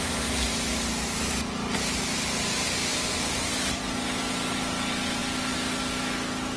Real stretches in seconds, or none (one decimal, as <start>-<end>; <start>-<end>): 0.0-6.6